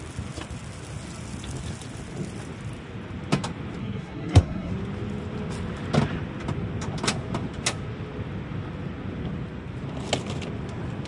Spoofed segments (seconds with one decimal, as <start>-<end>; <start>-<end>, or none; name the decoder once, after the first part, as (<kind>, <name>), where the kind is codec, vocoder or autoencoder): 3.8-4.7 (codec, SNAC)